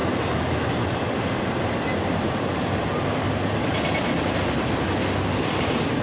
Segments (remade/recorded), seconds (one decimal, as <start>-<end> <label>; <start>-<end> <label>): 0.0-6.0 recorded